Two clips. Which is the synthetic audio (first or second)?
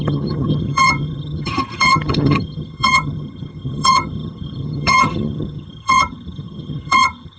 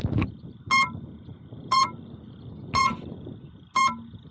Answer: first